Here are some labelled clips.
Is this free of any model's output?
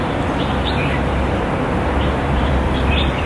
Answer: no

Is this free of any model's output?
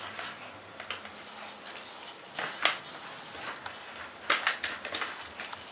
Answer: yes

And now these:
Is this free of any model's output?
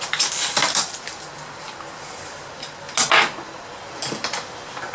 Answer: yes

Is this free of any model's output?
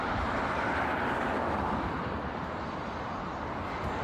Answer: yes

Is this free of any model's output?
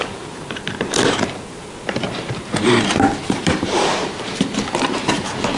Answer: no